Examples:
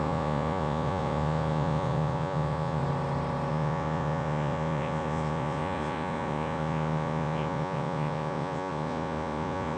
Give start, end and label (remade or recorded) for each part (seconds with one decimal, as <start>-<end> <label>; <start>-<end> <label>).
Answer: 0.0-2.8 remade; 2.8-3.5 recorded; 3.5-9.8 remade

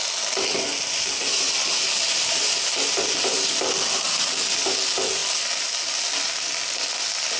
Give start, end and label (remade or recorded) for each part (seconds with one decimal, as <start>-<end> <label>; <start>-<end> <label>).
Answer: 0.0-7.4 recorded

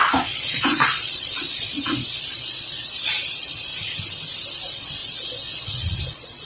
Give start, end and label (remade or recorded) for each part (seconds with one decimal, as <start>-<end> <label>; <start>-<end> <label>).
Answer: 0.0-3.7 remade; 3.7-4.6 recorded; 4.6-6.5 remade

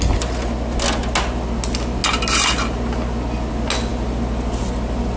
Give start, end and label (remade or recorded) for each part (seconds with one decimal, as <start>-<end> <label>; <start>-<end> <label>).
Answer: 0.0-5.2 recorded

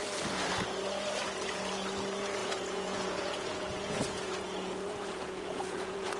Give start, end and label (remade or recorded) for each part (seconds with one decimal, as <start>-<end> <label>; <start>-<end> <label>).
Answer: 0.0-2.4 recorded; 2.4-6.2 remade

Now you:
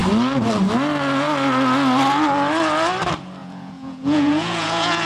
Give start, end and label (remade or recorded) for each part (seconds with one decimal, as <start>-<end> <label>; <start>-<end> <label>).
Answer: 0.0-3.4 recorded; 3.4-5.1 remade